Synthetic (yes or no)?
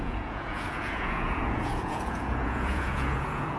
yes